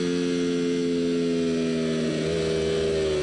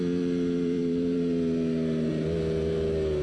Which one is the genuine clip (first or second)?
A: first